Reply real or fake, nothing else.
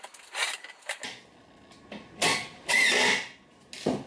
real